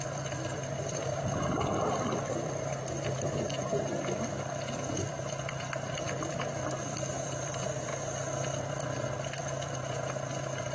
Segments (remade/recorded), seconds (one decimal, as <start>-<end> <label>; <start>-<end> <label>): 0.0-7.9 remade; 7.9-8.6 recorded; 8.6-10.7 remade